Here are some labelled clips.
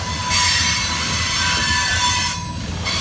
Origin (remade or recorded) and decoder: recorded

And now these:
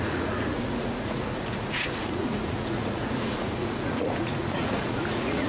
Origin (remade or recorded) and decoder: remade, vocoder, Vocos